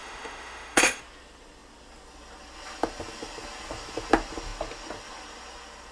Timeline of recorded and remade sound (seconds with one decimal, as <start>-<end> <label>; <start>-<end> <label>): 0.0-1.0 remade; 1.0-5.9 recorded